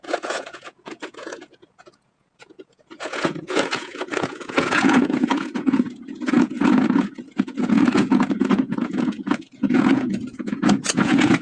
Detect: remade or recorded remade